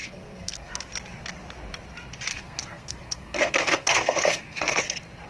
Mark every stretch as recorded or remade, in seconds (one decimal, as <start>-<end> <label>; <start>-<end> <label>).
0.0-0.7 remade; 0.7-2.3 recorded; 2.3-4.8 remade; 4.8-5.3 recorded